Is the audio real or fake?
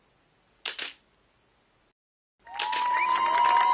real